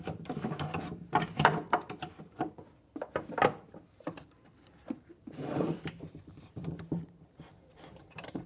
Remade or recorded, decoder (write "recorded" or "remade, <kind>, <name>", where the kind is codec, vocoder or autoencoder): remade, vocoder, BigVGAN v2